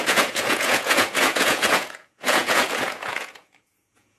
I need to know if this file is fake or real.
fake